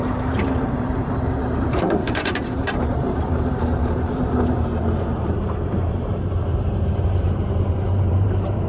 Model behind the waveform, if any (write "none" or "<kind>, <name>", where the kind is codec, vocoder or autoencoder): vocoder, BigVGAN v2